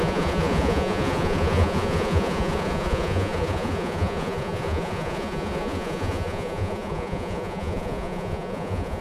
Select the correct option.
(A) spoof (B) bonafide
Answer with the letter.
A